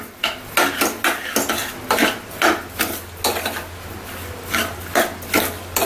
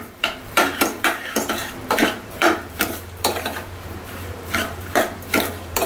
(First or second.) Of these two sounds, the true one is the first